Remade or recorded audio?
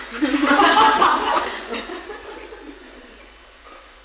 remade